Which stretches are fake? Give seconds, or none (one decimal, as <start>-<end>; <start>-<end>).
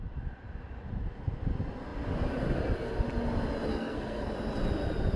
3.7-4.3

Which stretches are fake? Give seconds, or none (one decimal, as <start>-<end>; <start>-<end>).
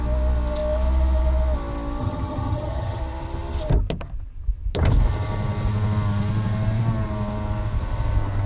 2.0-3.0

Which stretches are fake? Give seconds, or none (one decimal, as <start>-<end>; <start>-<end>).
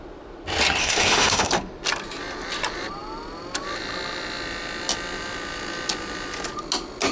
0.8-1.5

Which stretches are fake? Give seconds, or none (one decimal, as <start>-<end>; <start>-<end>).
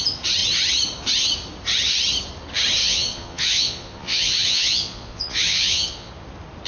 2.8-6.1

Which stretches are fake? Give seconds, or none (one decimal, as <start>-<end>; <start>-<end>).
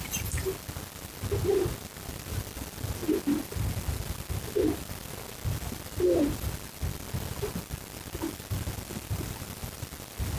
none